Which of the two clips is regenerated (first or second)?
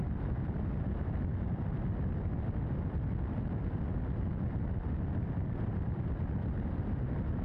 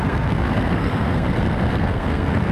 second